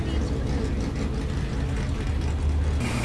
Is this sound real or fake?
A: real